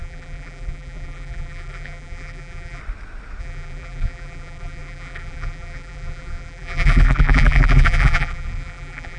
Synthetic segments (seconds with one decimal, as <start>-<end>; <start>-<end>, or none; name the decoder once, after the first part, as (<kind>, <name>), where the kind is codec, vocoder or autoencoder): 0.0-2.8 (vocoder, BigVGAN v2); 3.4-9.2

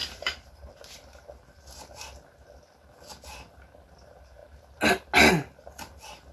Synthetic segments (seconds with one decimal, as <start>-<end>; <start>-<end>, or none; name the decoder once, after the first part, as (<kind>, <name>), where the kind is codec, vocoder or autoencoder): 0.0-0.7 (vocoder, BigVGAN v2)

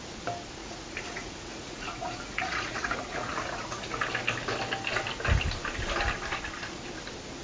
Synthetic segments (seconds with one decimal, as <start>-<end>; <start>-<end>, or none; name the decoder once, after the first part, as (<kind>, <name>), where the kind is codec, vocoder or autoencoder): 0.6-4.0 (vocoder, Vocos)

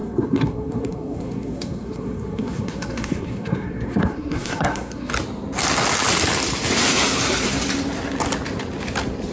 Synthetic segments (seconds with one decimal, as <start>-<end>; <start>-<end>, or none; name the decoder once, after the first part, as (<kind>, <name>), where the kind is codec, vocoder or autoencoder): 0.0-5.1 (codec, SNAC)

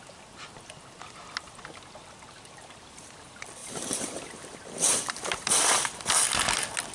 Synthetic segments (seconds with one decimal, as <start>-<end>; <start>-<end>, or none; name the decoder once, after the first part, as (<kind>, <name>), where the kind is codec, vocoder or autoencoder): 3.6-6.0 (vocoder, BigVGAN v2)

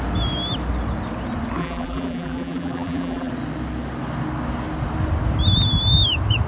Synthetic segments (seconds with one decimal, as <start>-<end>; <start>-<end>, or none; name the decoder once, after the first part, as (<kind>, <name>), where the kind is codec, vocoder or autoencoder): 1.6-3.3 (vocoder, BigVGAN v2)

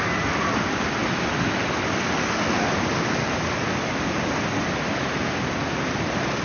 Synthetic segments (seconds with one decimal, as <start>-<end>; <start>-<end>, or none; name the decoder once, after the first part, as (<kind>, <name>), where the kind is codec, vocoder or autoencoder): none